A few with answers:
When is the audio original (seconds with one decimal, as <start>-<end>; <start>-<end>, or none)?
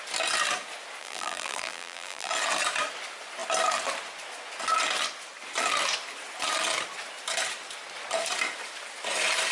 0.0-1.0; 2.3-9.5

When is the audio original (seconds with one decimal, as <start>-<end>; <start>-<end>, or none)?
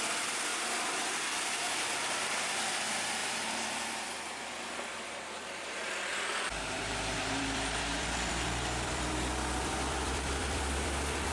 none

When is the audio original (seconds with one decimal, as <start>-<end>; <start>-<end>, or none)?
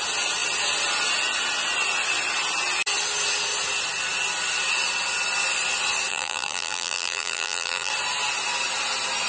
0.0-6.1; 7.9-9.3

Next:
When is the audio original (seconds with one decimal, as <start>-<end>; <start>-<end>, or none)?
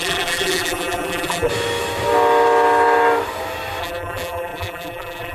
1.5-3.8